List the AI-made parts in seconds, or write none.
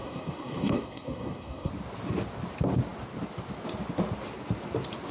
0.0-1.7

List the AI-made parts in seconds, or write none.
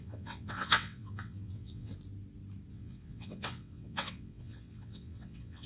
0.0-1.9; 2.7-5.7